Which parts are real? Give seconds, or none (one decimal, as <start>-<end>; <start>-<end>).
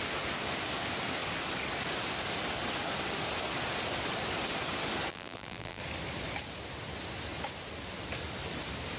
0.0-5.1; 5.8-9.0